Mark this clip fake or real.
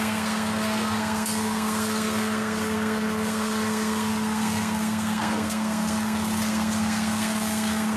fake